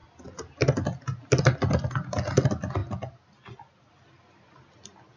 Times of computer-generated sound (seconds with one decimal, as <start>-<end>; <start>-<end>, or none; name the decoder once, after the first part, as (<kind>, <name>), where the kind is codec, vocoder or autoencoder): none